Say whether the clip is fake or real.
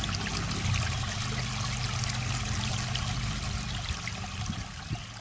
real